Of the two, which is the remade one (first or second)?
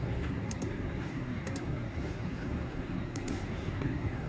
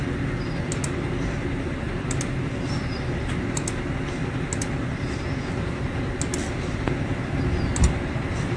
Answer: first